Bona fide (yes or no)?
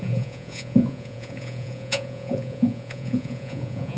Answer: no